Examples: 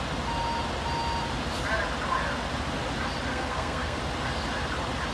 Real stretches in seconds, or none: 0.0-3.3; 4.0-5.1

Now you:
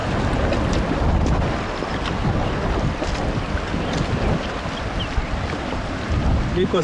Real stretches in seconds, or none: 0.0-6.8